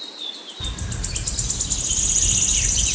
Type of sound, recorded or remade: recorded